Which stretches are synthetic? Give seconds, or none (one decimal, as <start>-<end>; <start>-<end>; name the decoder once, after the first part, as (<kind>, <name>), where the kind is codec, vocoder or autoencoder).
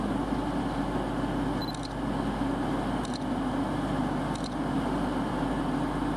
none